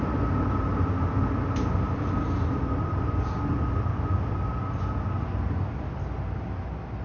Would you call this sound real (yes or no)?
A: yes